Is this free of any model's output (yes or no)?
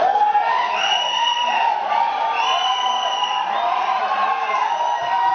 yes